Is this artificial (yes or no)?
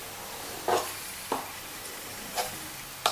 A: no